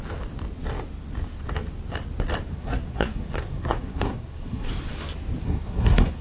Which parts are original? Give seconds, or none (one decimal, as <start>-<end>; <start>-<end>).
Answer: 0.0-2.5; 4.7-5.4